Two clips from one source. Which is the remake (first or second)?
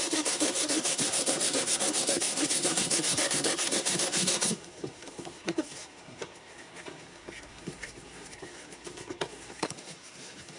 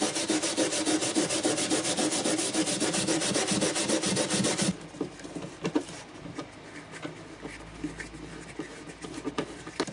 first